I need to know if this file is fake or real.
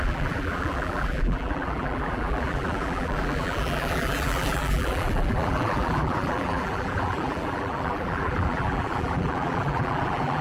fake